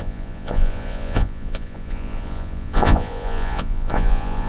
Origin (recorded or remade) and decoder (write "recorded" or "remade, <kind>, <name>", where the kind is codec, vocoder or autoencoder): remade, vocoder, Vocos